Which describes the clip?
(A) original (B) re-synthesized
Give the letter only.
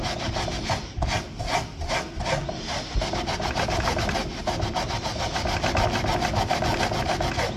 A